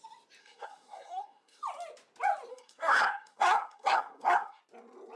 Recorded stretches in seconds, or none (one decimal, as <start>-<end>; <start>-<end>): 0.0-0.4; 1.6-2.5; 4.6-5.2